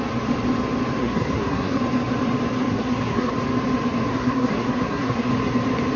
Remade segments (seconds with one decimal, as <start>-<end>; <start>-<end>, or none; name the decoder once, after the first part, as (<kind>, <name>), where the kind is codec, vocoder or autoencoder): 1.0-1.8 (codec, SNAC); 2.7-3.3; 4.1-5.3

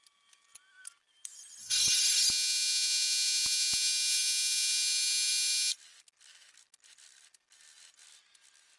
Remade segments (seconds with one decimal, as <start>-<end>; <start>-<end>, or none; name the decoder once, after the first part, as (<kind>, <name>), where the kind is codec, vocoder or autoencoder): 1.6-2.3 (codec, SNAC)

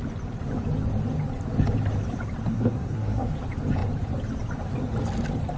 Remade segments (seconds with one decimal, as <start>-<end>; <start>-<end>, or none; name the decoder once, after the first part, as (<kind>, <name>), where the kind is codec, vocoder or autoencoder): 2.5-3.3 (codec, SNAC)